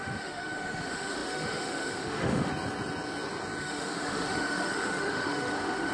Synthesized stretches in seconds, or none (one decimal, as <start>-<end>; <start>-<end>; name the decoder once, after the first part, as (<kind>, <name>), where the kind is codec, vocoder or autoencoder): 0.0-2.5 (autoencoder, DAC-VAE); 3.6-5.9